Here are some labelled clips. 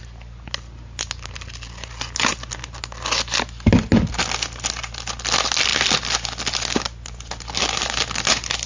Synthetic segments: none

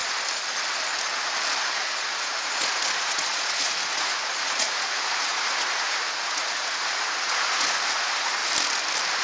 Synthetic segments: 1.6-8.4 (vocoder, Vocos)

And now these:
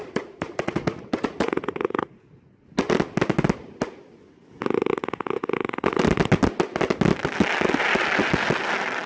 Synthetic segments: 0.0-2.4 (vocoder, Vocos)

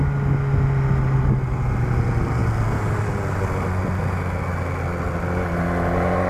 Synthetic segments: none

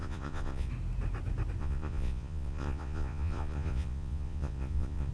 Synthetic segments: 0.0-0.7 (vocoder, Vocos); 1.6-5.1